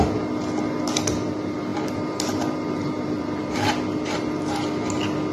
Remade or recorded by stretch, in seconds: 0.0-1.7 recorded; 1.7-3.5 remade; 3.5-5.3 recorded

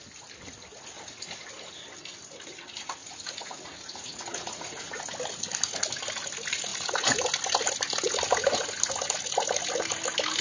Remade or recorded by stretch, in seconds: 0.0-3.0 recorded; 3.0-5.0 remade; 5.0-10.4 recorded

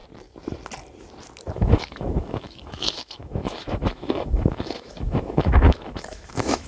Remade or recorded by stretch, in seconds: 0.0-1.5 recorded; 1.5-6.7 remade

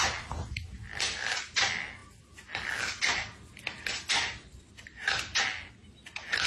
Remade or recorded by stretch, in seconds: 0.0-6.5 recorded